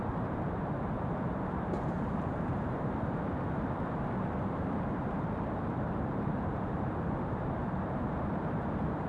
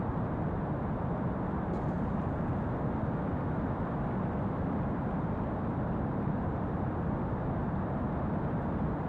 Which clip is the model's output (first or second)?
first